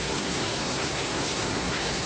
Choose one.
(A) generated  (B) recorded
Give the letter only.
A